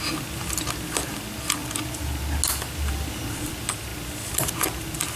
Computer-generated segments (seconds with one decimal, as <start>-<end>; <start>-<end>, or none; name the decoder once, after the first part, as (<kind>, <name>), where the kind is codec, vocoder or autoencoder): none